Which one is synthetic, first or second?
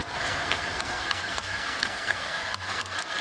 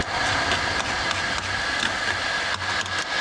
first